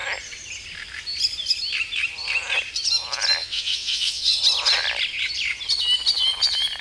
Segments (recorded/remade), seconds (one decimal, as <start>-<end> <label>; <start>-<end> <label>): 0.0-3.4 recorded; 3.4-4.4 remade; 4.4-6.8 recorded